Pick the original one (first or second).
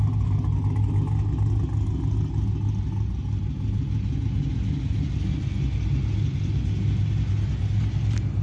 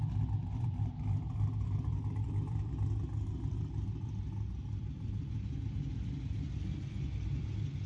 first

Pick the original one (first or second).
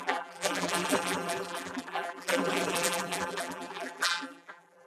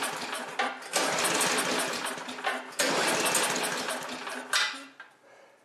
second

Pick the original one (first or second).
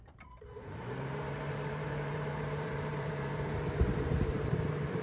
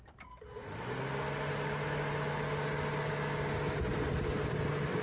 second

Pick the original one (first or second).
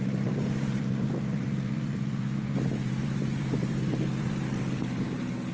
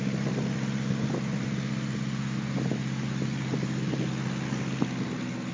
second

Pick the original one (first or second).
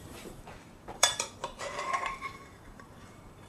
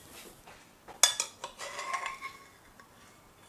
second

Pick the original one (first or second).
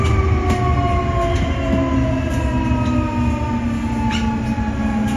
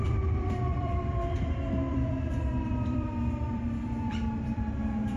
first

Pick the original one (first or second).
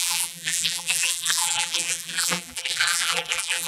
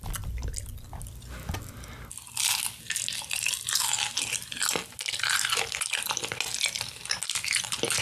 second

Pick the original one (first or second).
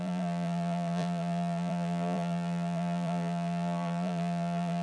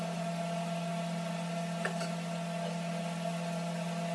second